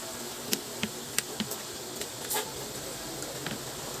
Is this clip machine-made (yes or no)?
no